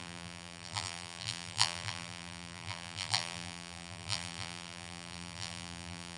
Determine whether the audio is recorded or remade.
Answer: remade